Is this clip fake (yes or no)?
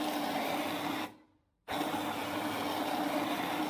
no